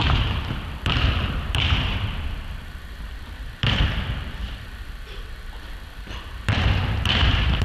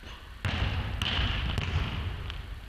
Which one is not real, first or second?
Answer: first